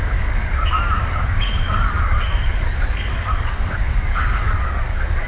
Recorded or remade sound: remade